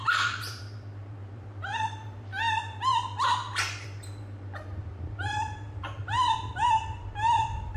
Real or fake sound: fake